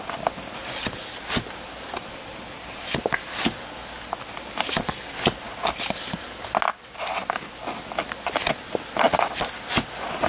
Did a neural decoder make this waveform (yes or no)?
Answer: no